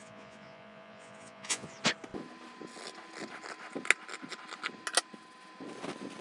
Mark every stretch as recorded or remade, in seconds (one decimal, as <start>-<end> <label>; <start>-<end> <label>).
0.0-1.7 remade; 1.7-6.2 recorded